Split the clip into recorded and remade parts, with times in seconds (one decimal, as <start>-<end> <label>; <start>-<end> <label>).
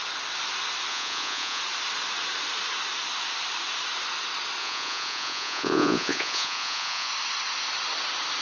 0.0-0.9 recorded; 0.9-1.6 remade; 1.6-4.6 recorded; 4.6-7.1 remade; 7.1-8.4 recorded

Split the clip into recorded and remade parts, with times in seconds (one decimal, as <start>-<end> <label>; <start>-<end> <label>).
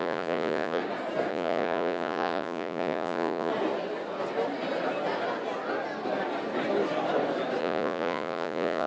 0.0-0.8 remade; 0.8-1.3 recorded; 1.3-3.5 remade; 3.5-7.6 recorded; 7.6-8.9 remade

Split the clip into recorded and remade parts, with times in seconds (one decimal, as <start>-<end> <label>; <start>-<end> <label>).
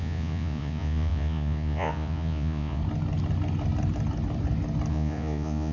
0.0-2.8 remade; 2.8-4.9 recorded; 4.9-5.7 remade